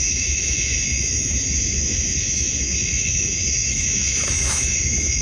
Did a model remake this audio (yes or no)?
yes